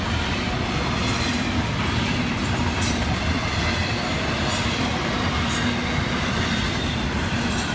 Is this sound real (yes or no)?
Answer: no